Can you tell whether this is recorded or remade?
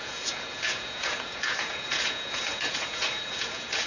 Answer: remade